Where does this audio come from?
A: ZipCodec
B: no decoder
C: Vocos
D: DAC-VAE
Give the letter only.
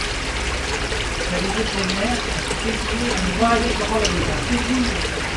B